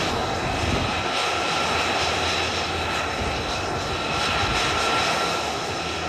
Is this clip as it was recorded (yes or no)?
yes